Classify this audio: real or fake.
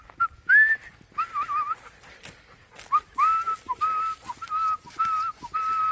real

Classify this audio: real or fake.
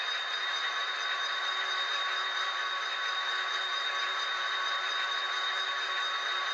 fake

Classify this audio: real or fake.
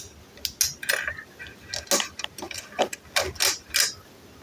real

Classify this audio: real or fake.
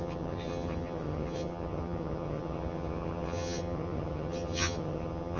fake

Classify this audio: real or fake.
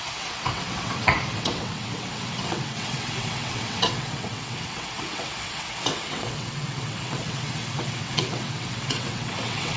fake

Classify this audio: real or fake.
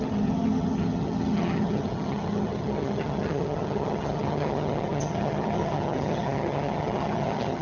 fake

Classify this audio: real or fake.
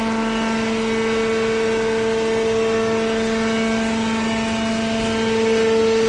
real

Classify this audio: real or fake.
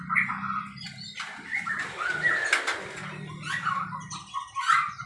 real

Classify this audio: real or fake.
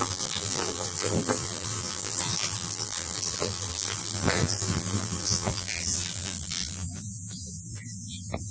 fake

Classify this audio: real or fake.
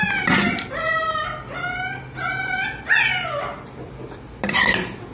real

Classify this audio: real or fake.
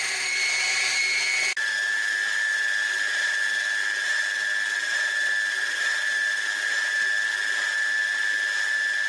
real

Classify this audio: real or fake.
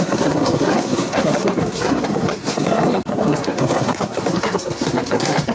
fake